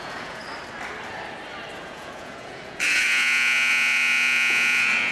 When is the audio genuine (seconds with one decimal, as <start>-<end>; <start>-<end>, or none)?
0.4-1.8